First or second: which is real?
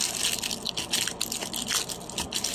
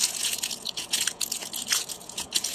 first